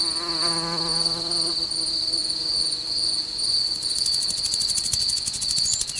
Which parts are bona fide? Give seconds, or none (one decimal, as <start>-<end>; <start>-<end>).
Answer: 0.0-2.2